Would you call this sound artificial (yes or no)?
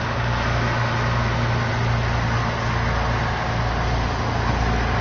no